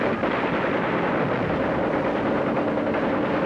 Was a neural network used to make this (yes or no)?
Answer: no